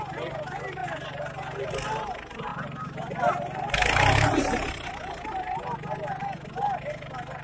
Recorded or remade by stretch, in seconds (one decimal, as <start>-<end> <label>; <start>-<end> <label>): 0.0-7.4 recorded